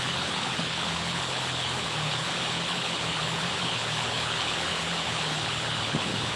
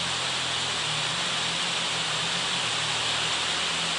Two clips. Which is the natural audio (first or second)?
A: second